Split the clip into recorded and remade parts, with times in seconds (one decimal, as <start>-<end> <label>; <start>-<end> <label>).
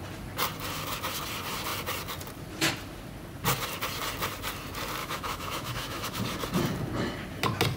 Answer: 0.0-5.0 recorded; 5.0-6.2 remade; 6.2-7.8 recorded